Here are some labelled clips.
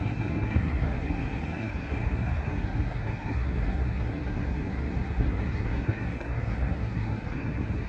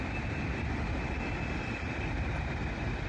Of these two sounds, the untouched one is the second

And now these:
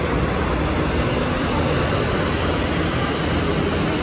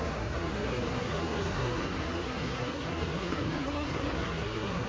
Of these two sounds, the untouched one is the first